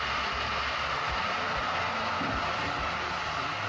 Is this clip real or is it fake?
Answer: real